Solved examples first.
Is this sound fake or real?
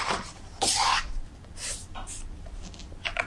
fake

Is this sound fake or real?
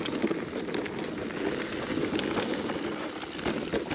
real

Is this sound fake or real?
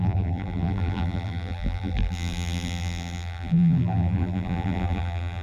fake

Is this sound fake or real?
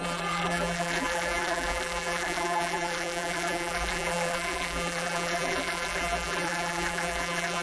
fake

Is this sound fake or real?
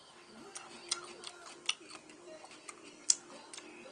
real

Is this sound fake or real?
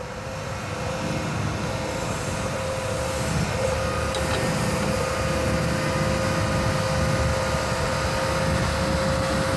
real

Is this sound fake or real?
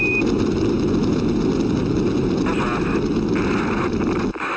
fake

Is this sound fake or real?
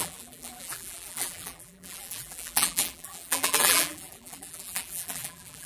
fake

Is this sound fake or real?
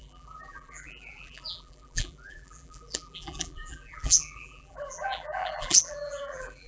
fake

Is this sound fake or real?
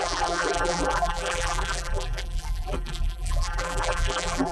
fake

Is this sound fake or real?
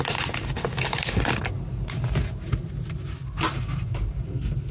real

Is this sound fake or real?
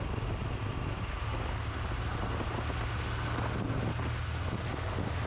real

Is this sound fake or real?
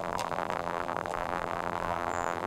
fake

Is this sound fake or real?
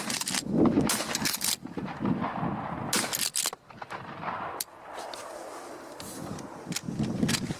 real